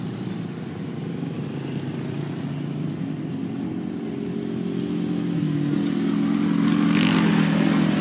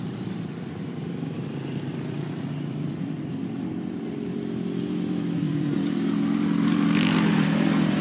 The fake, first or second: second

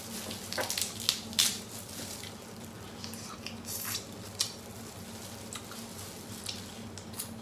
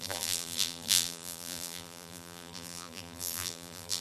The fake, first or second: second